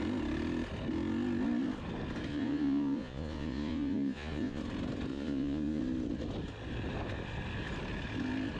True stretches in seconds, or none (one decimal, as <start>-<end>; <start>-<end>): 0.0-2.3; 4.6-5.1; 5.8-8.6